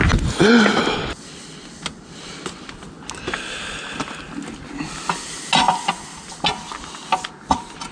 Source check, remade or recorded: recorded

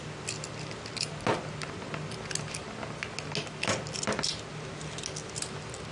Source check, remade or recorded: recorded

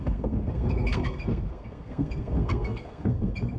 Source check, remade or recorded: remade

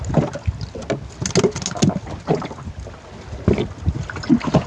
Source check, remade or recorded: recorded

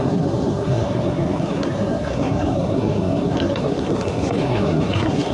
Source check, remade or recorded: remade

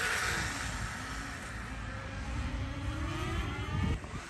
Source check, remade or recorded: recorded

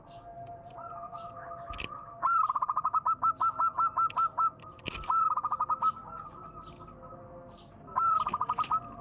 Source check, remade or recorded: recorded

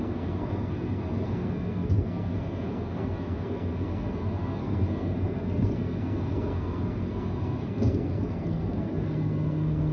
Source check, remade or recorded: remade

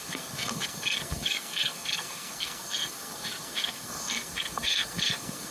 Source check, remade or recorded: remade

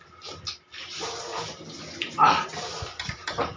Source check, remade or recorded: recorded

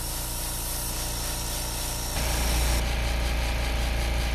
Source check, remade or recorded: recorded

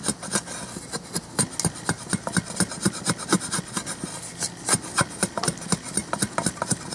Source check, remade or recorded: recorded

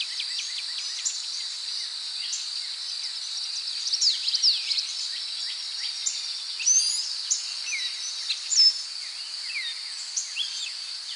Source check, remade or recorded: recorded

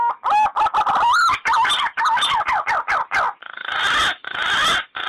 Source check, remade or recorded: recorded